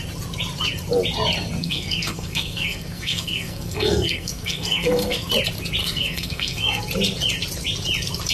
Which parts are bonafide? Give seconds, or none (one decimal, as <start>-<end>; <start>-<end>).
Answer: 0.0-1.6; 5.3-5.8; 6.8-8.3